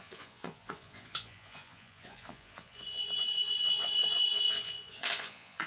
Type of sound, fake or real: fake